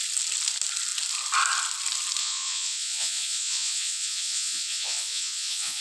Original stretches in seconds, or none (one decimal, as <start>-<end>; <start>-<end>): 0.0-2.2